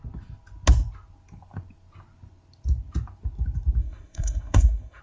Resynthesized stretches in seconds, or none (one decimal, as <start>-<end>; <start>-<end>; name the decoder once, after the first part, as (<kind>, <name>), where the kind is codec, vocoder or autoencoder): 3.8-5.0 (codec, SNAC)